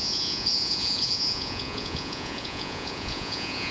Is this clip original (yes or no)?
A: no